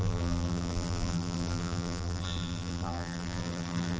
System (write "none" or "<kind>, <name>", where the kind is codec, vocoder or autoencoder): vocoder, BigVGAN v2